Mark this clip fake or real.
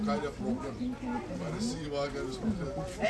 real